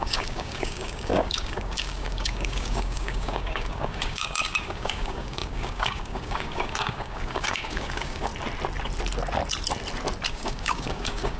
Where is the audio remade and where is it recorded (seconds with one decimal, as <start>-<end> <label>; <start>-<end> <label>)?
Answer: 0.0-8.3 remade; 8.3-10.3 recorded; 10.3-11.4 remade

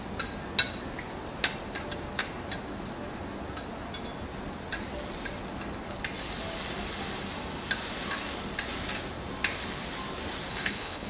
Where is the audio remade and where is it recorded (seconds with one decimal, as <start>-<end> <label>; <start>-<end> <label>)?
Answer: 0.0-10.5 recorded; 10.5-11.1 remade

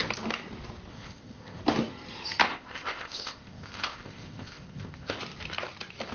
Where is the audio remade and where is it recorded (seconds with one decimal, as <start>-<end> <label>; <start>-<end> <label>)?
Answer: 0.0-0.9 recorded; 0.9-1.6 remade; 1.6-2.4 recorded; 2.4-5.2 remade; 5.2-6.1 recorded

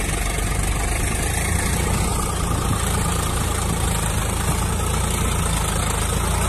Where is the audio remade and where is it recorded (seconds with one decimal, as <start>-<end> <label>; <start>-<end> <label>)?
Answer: 0.0-6.5 recorded

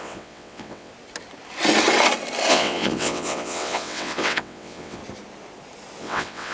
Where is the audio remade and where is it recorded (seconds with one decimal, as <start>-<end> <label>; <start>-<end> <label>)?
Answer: 0.0-0.9 remade; 0.9-2.5 recorded; 2.5-5.0 remade; 5.0-6.0 recorded; 6.0-6.5 remade

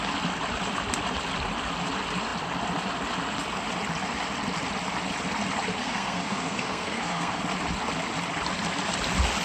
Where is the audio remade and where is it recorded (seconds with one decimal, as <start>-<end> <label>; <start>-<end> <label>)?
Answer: 0.0-5.8 recorded; 5.8-7.4 remade; 7.4-9.4 recorded

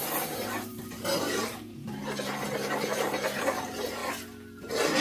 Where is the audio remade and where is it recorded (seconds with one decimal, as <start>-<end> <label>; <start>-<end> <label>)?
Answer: 0.0-4.0 remade; 4.0-4.6 recorded; 4.6-5.0 remade